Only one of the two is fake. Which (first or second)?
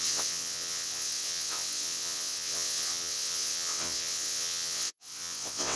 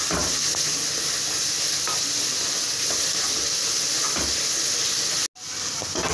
first